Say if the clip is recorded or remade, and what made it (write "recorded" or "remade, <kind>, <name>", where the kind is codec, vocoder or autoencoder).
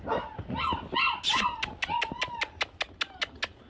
recorded